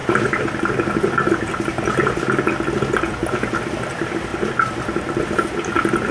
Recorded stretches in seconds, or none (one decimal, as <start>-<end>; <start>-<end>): 0.0-4.3; 5.1-6.1